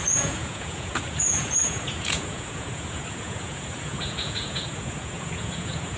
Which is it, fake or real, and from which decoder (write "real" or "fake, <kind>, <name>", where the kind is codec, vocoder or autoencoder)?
fake, vocoder, Vocos